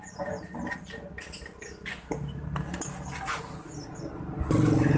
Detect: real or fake real